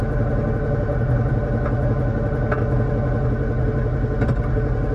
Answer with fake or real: real